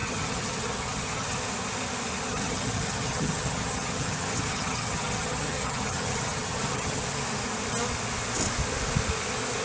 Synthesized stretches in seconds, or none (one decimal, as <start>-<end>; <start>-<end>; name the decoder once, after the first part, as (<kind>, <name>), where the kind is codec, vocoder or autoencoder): 0.0-1.4 (vocoder, HiFi-GAN); 2.3-7.0

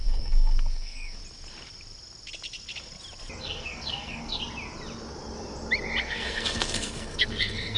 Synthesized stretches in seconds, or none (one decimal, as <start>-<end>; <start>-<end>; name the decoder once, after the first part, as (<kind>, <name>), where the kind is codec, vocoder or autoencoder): 0.0-1.2 (codec, SNAC); 3.4-4.4; 6.0-7.8

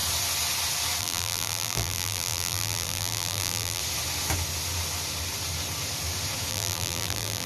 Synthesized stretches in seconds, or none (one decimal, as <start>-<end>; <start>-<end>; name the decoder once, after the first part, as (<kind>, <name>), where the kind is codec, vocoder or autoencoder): 1.0-3.8 (vocoder, BigVGAN v2); 6.5-7.5

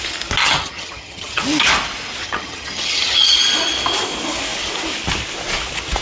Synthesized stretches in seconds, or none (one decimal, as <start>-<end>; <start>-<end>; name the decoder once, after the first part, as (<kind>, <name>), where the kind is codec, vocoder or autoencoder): 0.4-1.4 (vocoder, HiFi-GAN); 2.2-3.4

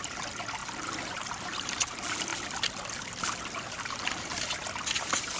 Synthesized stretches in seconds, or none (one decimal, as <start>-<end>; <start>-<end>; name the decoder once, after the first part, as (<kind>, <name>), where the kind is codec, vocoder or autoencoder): 0.6-1.9 (vocoder, BigVGAN v2)

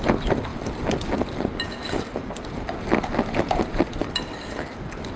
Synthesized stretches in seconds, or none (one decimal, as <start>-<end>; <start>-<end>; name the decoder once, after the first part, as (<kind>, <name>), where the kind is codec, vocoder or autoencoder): none